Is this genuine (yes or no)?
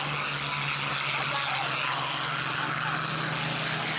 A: yes